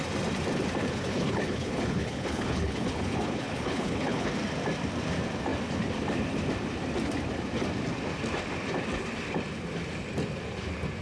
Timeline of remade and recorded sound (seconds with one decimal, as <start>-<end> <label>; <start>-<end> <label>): 0.0-0.8 recorded; 0.8-4.3 remade; 4.3-11.0 recorded